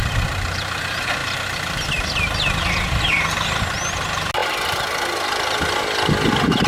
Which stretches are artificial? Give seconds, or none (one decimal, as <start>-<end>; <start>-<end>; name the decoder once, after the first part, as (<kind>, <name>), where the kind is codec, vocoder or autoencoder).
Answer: none